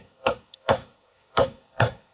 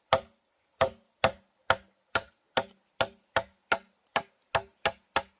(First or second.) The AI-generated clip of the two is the first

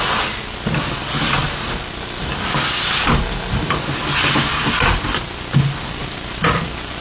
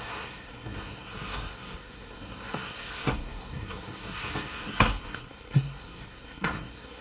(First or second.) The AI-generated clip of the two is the second